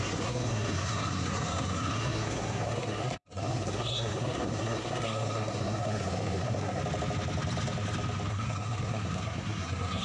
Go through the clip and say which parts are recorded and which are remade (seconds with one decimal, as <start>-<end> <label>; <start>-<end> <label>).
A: 0.0-6.8 remade; 6.8-8.3 recorded; 8.3-10.0 remade